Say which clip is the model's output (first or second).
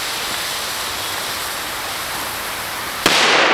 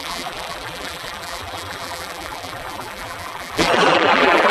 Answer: second